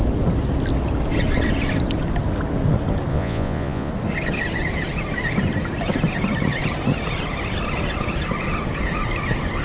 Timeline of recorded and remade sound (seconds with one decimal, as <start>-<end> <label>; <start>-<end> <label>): 0.0-3.1 recorded; 3.1-3.9 remade; 3.9-9.6 recorded

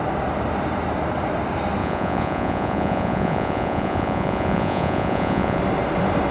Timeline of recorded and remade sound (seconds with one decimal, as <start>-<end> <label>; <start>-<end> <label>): 0.0-1.8 recorded; 1.8-5.6 remade; 5.6-6.3 recorded

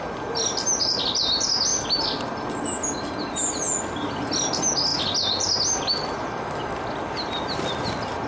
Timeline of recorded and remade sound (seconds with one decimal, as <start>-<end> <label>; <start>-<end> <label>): 0.0-8.3 recorded

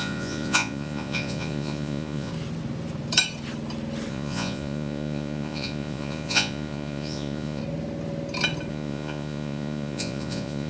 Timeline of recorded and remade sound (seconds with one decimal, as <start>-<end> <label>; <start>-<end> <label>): 0.0-2.3 remade; 2.3-4.1 recorded; 4.1-7.6 remade; 7.6-8.7 recorded; 8.7-10.7 remade